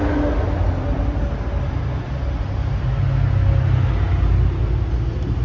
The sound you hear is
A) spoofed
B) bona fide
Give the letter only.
B